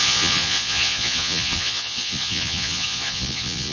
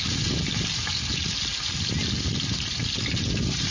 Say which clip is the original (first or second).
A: second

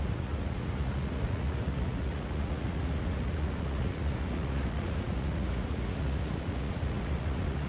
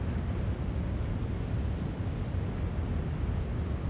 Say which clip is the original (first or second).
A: second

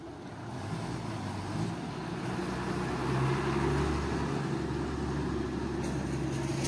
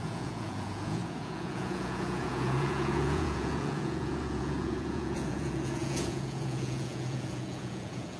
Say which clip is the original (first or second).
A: first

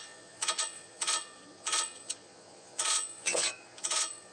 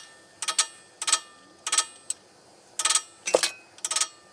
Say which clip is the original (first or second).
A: second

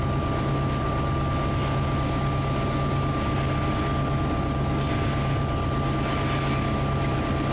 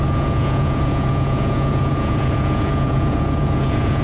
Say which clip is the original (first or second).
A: first